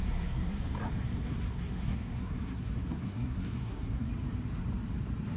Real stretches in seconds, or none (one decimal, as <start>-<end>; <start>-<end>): 0.6-1.0; 4.1-5.4